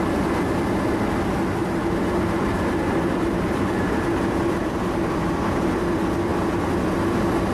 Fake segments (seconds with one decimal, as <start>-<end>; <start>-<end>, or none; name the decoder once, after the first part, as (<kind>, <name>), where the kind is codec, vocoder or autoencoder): 1.6-5.6 (vocoder, BigVGAN v2)